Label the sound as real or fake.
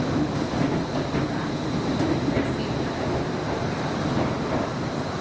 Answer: fake